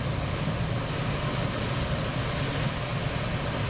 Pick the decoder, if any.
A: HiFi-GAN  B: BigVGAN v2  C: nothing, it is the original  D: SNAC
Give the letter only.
C